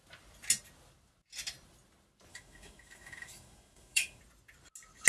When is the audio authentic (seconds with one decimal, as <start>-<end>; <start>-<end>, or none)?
0.0-2.3; 4.2-5.1